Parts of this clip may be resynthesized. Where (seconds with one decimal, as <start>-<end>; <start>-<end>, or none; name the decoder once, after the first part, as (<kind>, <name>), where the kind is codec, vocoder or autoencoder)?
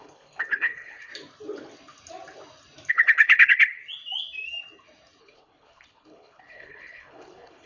0.0-1.1 (codec, HILCodec); 2.9-3.8; 5.2-7.7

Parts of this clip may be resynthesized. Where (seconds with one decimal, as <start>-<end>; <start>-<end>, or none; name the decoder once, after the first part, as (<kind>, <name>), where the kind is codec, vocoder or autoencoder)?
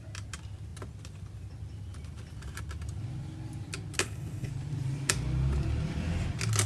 4.0-4.5 (codec, HILCodec)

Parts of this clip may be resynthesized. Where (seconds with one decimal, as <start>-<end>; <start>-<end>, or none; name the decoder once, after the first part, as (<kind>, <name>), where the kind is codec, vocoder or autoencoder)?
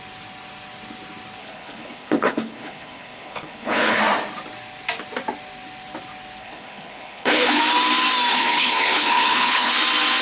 1.4-4.0 (codec, HILCodec); 6.4-7.6; 8.3-9.7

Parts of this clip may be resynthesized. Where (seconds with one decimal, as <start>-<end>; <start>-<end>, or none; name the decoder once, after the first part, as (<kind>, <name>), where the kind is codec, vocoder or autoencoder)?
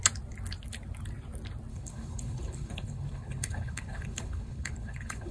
1.7-5.3 (codec, HILCodec)